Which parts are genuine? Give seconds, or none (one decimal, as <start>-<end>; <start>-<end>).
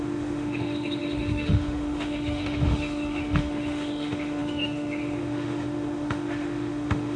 none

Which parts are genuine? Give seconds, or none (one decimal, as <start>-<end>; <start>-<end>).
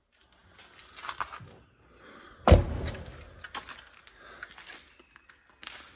0.0-6.0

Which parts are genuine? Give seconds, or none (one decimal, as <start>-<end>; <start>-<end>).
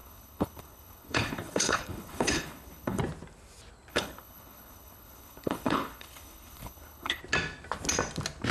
3.0-3.9; 7.2-8.5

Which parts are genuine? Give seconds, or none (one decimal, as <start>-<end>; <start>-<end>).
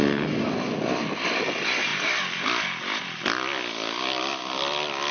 0.0-5.1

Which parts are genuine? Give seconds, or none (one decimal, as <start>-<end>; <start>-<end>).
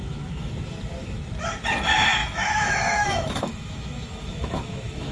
0.5-2.2